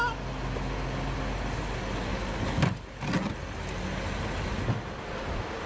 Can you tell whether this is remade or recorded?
recorded